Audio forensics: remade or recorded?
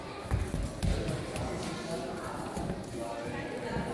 recorded